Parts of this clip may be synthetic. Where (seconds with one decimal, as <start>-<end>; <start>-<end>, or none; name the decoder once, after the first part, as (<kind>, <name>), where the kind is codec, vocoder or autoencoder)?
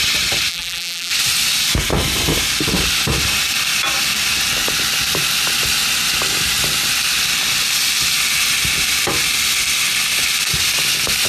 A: 0.5-1.1 (vocoder, BigVGAN v2)